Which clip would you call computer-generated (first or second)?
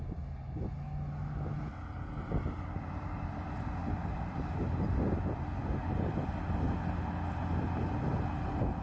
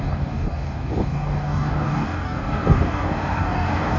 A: second